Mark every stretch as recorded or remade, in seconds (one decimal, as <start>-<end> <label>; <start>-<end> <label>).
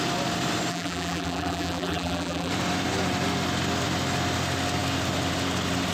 0.0-0.7 recorded; 0.7-2.5 remade; 2.5-5.9 recorded